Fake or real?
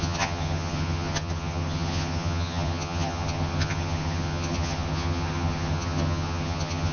fake